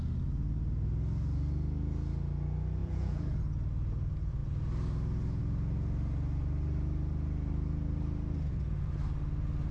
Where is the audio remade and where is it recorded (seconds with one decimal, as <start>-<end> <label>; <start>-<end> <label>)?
0.0-2.8 recorded; 2.8-3.4 remade; 3.4-9.7 recorded